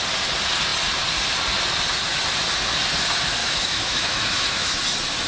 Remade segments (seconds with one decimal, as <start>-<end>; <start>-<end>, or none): 3.4-4.8